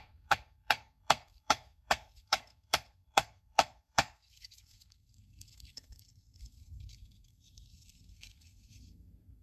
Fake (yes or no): yes